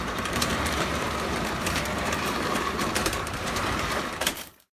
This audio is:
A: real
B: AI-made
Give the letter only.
B